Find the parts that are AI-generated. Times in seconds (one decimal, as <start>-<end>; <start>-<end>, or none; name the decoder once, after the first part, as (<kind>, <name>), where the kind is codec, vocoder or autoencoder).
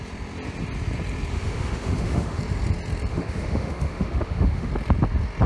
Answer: 1.3-2.4 (autoencoder, DAC-VAE); 3.1-4.7